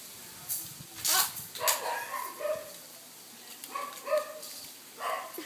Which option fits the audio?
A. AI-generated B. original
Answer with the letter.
B